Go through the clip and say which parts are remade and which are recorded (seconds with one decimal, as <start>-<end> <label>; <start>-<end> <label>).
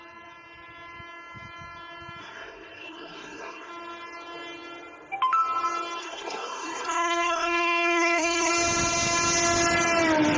0.0-2.2 recorded; 2.2-3.7 remade; 3.7-6.0 recorded; 6.0-8.5 remade; 8.5-10.4 recorded